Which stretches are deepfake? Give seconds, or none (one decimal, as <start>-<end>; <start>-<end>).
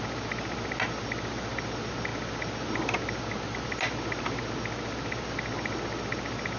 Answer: none